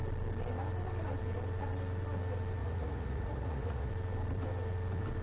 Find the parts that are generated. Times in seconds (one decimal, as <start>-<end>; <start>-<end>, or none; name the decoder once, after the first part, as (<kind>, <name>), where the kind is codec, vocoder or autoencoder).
2.6-3.9 (vocoder, Vocos)